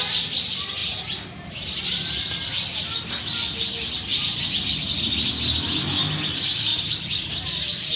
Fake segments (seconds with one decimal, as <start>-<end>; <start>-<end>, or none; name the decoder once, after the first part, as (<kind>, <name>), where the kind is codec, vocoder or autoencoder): 0.8-1.8 (vocoder, BigVGAN v2); 4.1-5.3; 6.7-7.3